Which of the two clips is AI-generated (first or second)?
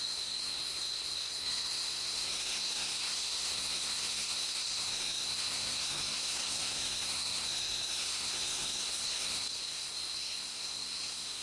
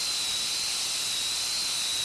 first